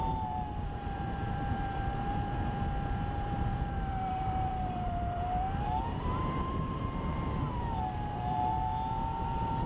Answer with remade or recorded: remade